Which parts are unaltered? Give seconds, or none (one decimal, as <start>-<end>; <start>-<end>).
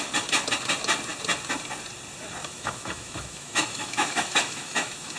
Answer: 0.0-2.4